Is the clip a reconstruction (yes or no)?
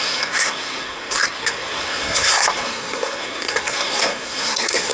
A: yes